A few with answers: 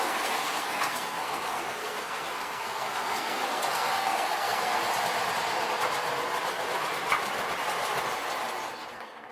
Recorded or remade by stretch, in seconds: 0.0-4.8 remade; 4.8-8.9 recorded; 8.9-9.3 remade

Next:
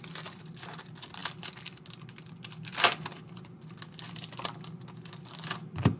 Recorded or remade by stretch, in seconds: 0.0-6.0 recorded

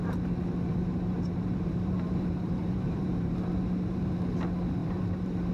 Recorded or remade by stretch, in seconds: 0.0-0.8 recorded; 0.8-4.1 remade; 4.1-4.8 recorded; 4.8-5.5 remade

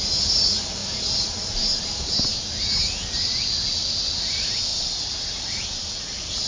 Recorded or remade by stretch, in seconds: 0.0-2.3 remade; 2.3-3.7 recorded; 3.7-6.5 remade

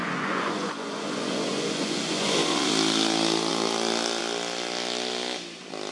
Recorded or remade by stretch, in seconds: 0.0-2.7 remade; 2.7-5.9 recorded

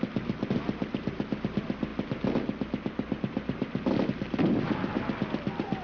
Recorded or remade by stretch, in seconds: 0.0-5.8 recorded

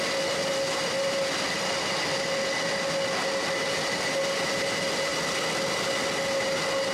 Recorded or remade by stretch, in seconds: 0.0-6.9 recorded

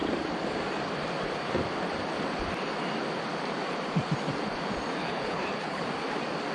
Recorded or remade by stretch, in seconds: 0.0-5.0 recorded; 5.0-5.8 remade; 5.8-6.5 recorded